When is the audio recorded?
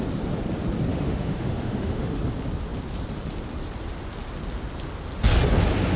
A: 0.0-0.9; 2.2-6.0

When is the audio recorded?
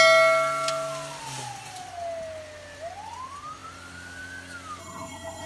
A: 0.0-4.8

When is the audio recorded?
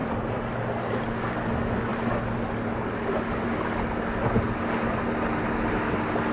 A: 0.0-6.3